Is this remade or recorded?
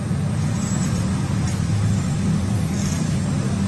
recorded